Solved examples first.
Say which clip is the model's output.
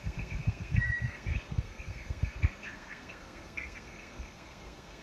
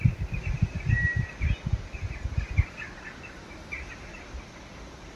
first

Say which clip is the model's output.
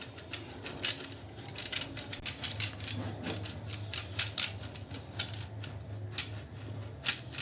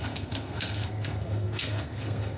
second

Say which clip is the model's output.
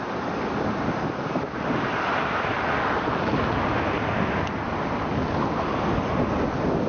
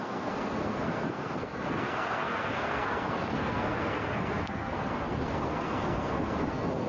second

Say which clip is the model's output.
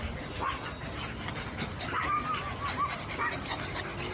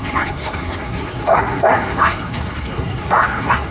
second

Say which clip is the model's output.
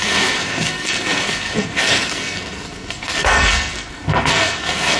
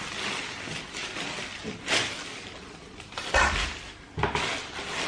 first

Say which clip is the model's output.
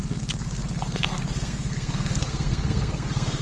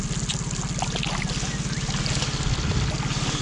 first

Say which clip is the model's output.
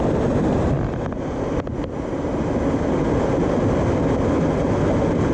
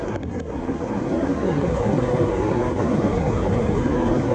second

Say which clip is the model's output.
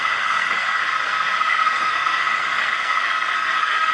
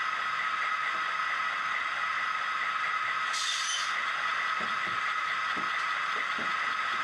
first